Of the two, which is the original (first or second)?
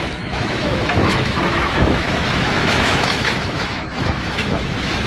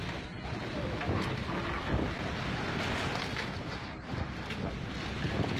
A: second